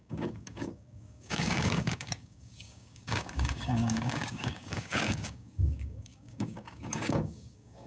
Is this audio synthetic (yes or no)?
yes